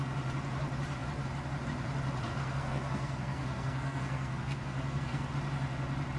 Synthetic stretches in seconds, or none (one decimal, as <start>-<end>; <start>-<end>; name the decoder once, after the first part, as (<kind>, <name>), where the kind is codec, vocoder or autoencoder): 2.3-5.3 (codec, SNAC)